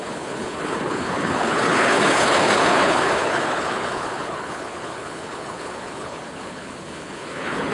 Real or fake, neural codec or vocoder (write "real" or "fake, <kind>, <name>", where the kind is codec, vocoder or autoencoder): fake, codec, HILCodec